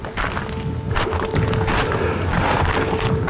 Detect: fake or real real